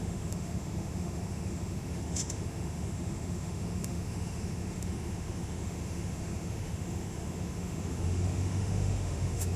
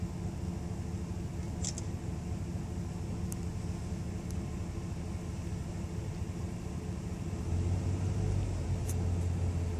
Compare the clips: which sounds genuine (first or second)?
second